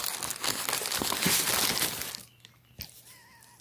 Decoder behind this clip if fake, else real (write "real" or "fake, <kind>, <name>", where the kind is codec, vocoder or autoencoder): real